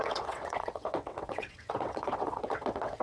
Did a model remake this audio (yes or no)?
yes